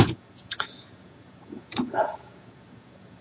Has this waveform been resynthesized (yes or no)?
yes